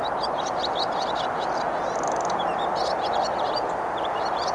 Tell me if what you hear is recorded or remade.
recorded